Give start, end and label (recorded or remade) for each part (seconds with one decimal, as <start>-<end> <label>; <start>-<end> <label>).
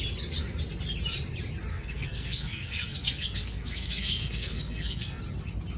0.0-1.7 recorded; 1.7-5.2 remade; 5.2-5.8 recorded